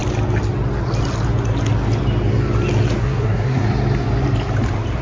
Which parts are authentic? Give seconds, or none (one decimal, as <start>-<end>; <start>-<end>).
0.0-3.0; 3.6-5.0